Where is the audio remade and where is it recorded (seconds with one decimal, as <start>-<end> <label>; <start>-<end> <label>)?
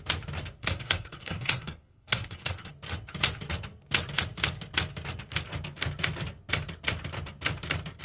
0.0-0.6 recorded; 0.6-2.7 remade; 2.7-8.0 recorded